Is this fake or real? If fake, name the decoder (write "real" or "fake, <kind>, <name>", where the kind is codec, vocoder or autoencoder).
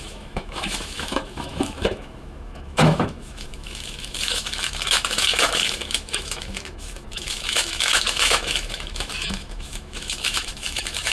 fake, autoencoder, DAC-VAE